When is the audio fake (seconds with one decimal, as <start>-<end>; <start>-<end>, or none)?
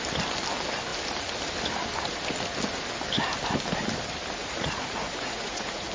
4.4-5.9